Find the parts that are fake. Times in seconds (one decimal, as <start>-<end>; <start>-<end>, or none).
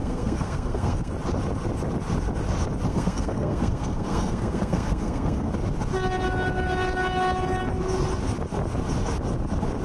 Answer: 0.0-1.1; 2.9-5.5